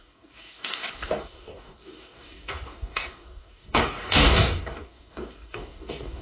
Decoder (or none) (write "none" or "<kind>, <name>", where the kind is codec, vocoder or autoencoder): codec, DAC